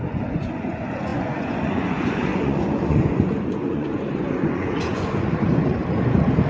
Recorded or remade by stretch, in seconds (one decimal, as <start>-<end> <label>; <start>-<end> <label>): 0.0-5.8 remade; 5.8-6.5 recorded